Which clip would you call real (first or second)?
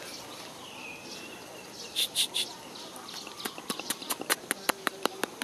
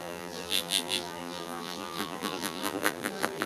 first